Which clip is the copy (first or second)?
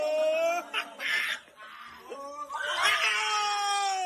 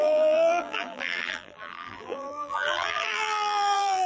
second